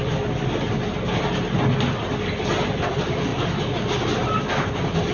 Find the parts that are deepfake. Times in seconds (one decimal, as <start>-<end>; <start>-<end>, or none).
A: none